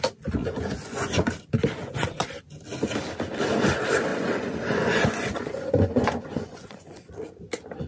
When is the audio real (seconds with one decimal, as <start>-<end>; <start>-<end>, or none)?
0.0-0.4; 1.3-1.8; 2.3-4.1; 7.1-7.9